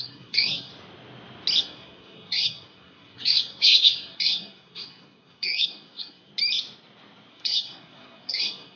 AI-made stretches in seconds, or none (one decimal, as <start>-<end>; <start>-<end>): 0.0-0.7; 1.6-6.3; 7.3-8.8